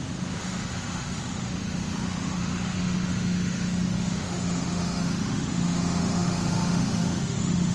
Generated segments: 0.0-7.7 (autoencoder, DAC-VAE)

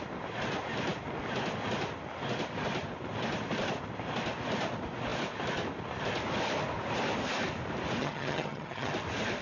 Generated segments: 8.0-8.9 (vocoder, HiFi-GAN)